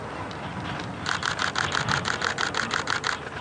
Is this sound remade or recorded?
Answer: recorded